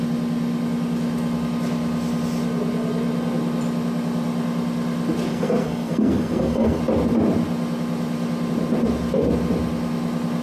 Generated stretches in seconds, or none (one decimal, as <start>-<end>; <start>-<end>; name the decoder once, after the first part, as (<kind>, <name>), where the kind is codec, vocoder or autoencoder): 5.3-6.8 (codec, SNAC)